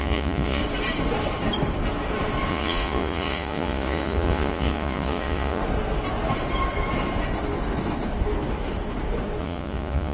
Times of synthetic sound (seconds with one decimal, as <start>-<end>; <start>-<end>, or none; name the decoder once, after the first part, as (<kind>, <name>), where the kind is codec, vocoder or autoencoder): 0.0-0.6 (vocoder, Vocos); 2.5-5.6; 9.4-10.1

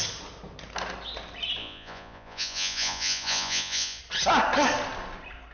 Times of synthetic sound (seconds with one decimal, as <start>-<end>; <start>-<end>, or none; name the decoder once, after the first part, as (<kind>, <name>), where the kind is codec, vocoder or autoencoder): 1.6-4.0 (vocoder, Vocos)

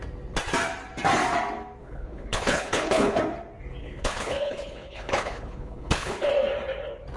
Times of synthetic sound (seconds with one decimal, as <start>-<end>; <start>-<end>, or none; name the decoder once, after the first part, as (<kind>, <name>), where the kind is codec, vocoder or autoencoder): 1.8-3.2 (codec, HILCodec); 3.8-6.3

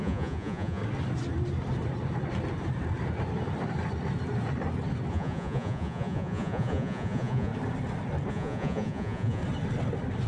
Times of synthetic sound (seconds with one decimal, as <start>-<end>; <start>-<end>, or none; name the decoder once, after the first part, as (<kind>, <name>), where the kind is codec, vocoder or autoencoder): 0.0-0.8 (vocoder, Vocos); 5.1-7.5; 8.3-9.4

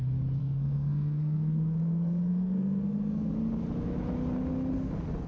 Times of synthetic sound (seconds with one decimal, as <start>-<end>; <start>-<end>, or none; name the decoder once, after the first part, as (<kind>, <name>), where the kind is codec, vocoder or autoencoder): 0.4-3.3 (codec, SNAC)

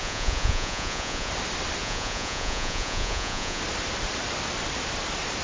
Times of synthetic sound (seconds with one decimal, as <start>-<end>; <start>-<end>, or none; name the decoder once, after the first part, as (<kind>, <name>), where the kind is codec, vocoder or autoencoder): 0.0-1.3 (vocoder, Vocos); 1.8-3.6

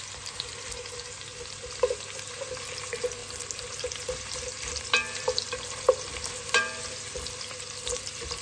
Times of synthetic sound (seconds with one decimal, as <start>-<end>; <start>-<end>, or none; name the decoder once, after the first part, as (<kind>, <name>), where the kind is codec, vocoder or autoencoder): none